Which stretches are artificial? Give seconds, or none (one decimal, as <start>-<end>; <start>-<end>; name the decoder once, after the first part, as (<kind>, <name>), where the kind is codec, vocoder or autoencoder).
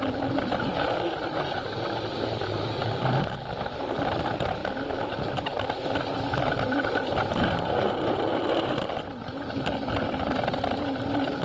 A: none